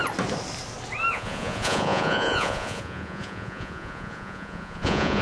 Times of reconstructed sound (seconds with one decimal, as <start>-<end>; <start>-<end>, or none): 1.1-5.2